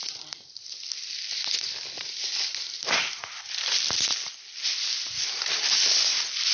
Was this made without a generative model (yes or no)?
no